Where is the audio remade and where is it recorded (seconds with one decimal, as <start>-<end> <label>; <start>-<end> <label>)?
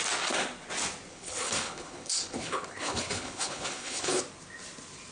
0.0-1.1 recorded; 1.1-4.2 remade; 4.2-5.1 recorded